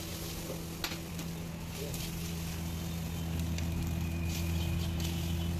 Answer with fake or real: real